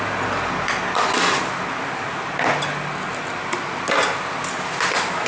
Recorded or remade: recorded